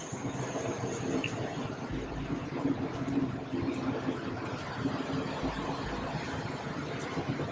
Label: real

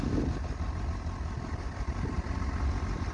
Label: real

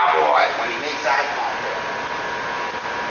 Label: real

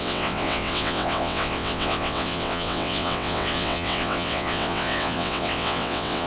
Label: fake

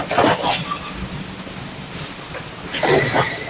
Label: real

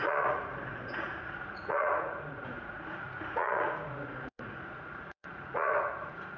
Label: fake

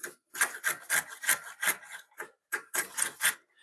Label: real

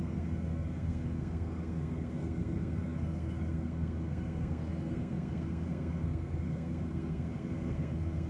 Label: fake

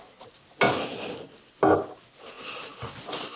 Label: real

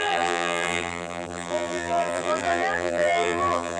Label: fake